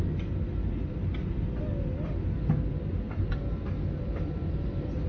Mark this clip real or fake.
real